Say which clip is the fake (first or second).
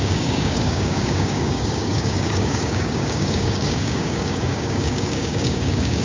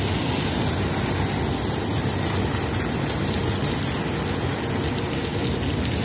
first